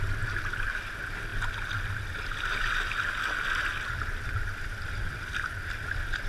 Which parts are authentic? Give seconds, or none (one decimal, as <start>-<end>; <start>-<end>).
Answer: 0.0-6.3